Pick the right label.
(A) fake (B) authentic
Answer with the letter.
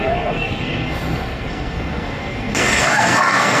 A